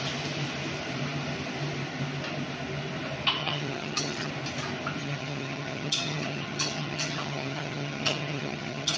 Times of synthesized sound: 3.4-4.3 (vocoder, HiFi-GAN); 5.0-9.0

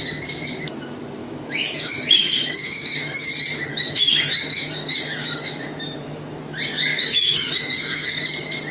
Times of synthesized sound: 1.2-3.3 (autoencoder, DAC-VAE); 3.7-6.4; 6.9-8.2

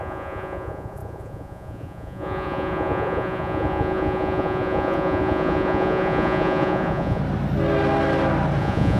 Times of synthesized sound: 0.0-7.2 (vocoder, Vocos); 8.6-9.0

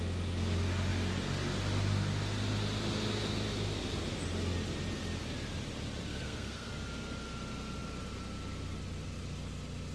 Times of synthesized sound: 6.1-6.7 (codec, SNAC)

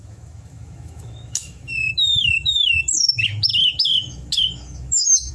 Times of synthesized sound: 0.0-5.3 (autoencoder, DAC-VAE)

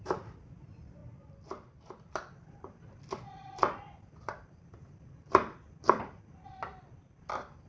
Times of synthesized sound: none